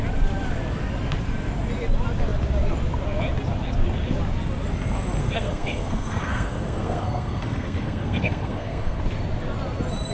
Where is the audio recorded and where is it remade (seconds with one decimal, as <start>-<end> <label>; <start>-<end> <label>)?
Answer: 0.0-5.2 recorded; 5.2-9.0 remade; 9.0-10.1 recorded